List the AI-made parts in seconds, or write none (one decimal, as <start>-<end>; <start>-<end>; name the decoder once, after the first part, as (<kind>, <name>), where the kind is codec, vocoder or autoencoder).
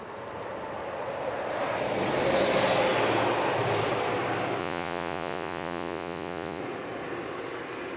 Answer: 4.6-6.6 (vocoder, Vocos)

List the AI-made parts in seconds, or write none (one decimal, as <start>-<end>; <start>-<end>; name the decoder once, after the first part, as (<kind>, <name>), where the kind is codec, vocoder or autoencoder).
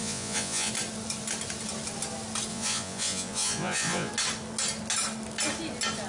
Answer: 0.0-0.7 (vocoder, Vocos); 2.5-4.1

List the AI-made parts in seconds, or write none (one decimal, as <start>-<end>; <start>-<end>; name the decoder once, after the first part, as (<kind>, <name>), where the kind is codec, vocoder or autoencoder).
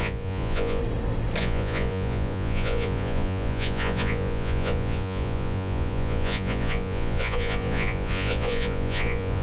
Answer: 0.0-0.8 (vocoder, Vocos); 1.4-9.4